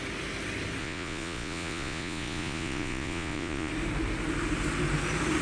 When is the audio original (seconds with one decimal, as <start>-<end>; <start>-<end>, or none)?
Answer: 0.0-0.8; 3.7-5.4